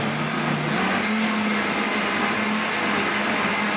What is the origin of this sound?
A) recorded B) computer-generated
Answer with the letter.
A